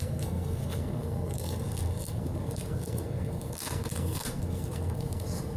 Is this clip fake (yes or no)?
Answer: yes